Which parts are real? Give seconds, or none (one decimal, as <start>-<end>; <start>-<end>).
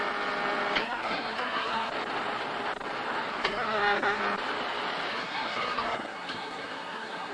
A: 0.0-0.8; 1.9-3.3; 4.2-5.1